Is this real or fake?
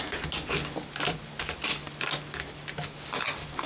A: real